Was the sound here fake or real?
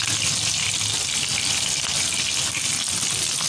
real